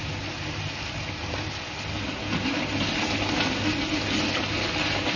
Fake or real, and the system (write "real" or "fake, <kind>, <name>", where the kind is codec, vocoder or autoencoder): real